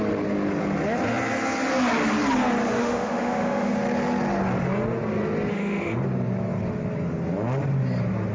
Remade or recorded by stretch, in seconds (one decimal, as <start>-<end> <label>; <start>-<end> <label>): 0.0-2.8 recorded; 2.8-3.7 remade; 3.7-5.5 recorded; 5.5-6.0 remade; 6.0-8.3 recorded